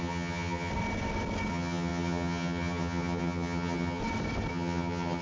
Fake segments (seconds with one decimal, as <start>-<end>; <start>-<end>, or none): 0.0-0.7; 1.5-4.0; 4.5-5.2